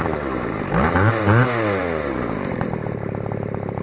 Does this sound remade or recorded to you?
remade